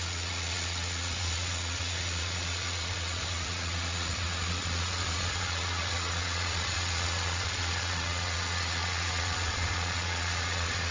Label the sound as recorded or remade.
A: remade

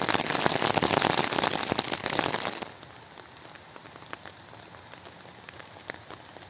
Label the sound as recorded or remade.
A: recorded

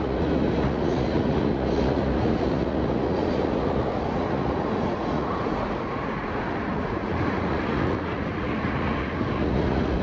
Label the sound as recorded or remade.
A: remade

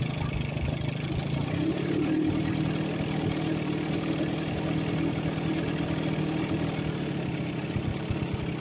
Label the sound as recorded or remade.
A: recorded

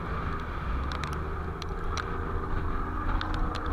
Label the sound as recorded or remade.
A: recorded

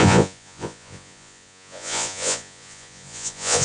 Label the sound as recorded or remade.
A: remade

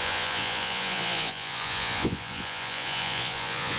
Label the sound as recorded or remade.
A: remade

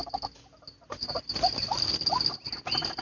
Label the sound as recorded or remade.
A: recorded